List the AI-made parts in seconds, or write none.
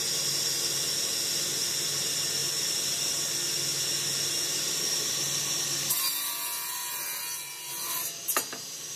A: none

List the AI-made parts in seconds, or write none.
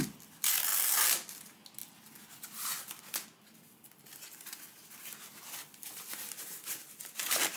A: none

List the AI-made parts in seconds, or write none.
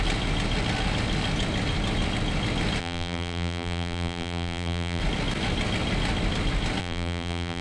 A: 2.8-5.0 (vocoder, BigVGAN v2); 6.8-7.6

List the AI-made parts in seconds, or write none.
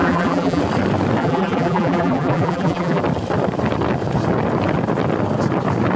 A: 0.0-0.6 (vocoder, BigVGAN v2); 1.2-3.0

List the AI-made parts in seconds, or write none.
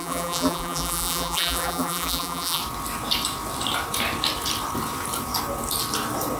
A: 0.0-2.6 (vocoder, BigVGAN v2)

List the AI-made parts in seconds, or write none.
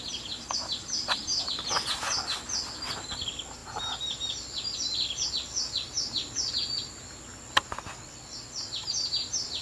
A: 0.0-1.2 (vocoder, BigVGAN v2)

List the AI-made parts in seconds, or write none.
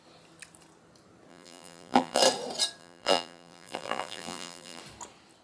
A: 1.3-2.2 (vocoder, BigVGAN v2); 2.8-4.8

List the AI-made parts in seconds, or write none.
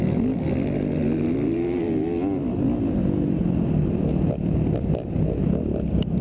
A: none